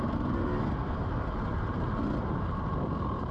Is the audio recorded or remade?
recorded